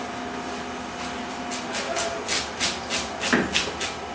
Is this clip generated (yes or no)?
no